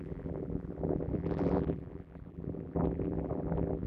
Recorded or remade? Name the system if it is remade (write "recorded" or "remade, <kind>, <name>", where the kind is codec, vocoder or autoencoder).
remade, vocoder, BigVGAN v2